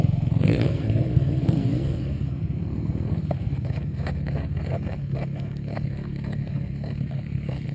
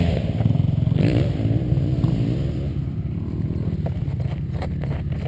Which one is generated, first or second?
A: first